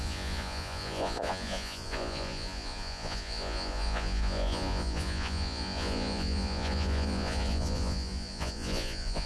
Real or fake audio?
fake